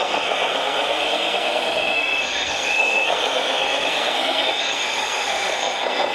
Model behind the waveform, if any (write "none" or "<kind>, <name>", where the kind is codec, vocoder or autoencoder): codec, SNAC